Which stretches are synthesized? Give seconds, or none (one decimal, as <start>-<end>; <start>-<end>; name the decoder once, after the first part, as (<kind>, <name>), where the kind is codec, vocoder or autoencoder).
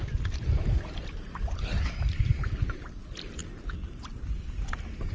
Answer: none